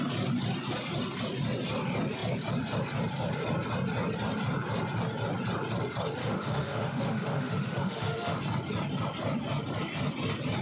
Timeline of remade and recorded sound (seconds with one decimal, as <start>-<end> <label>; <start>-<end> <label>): 0.0-6.2 recorded; 6.2-8.4 remade; 8.4-10.6 recorded